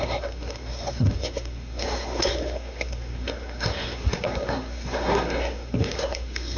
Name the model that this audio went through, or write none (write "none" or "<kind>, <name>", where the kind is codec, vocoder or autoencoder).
codec, SNAC